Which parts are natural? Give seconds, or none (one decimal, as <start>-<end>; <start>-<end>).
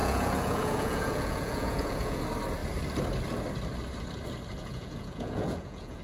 2.2-4.6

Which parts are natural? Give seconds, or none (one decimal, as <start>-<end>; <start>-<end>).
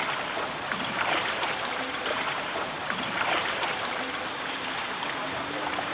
0.0-1.0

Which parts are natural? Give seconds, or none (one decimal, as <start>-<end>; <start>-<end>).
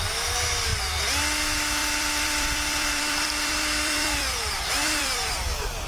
0.0-1.8; 5.3-5.9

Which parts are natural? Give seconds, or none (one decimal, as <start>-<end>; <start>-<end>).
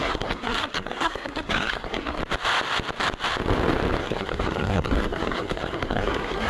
2.2-4.0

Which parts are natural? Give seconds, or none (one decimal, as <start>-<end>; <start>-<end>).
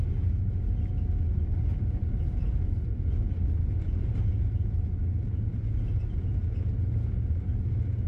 0.0-8.1